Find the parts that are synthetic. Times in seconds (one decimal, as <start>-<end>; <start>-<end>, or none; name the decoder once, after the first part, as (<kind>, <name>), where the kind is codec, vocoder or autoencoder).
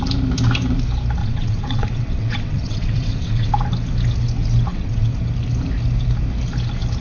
1.2-3.5 (vocoder, WaveNeXt); 4.7-5.2